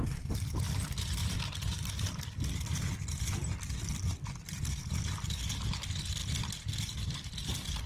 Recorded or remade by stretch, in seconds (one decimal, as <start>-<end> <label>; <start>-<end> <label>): 0.0-1.2 recorded; 1.2-4.9 remade; 4.9-7.9 recorded